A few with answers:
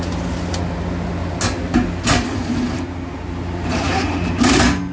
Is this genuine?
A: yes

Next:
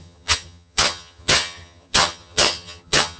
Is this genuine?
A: no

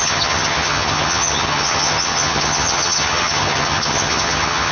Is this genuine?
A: no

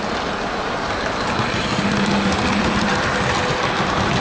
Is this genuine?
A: yes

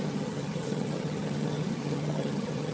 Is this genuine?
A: no